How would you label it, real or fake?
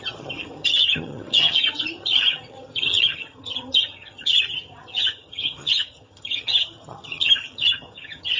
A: fake